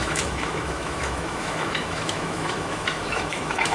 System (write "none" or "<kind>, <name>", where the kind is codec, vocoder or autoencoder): autoencoder, DAC-VAE